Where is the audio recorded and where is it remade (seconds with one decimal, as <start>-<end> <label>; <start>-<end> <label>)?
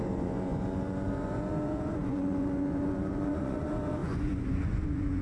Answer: 0.0-5.2 remade